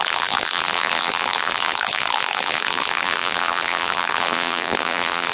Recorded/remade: remade